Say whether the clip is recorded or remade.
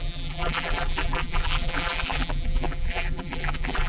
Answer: remade